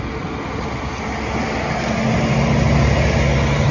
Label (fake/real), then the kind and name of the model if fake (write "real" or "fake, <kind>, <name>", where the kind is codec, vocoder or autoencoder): real